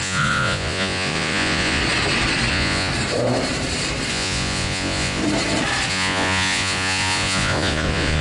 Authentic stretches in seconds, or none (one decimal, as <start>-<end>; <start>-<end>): 1.8-2.5; 2.9-4.1; 5.2-5.9